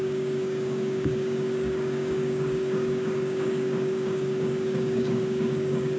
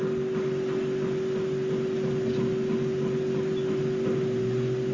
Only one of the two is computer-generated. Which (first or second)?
first